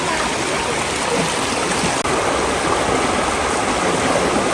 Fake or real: real